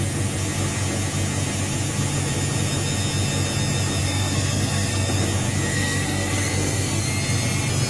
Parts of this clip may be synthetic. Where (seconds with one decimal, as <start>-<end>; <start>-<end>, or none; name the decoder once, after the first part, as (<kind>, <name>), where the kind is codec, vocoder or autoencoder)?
4.0-5.1 (codec, SNAC); 5.7-7.0